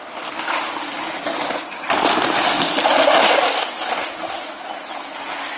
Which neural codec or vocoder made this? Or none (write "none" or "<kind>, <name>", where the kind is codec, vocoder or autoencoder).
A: none